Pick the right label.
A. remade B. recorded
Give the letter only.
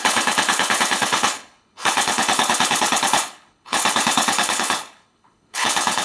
A